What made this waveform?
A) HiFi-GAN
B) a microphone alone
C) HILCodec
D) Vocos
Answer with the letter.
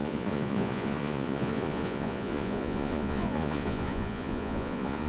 D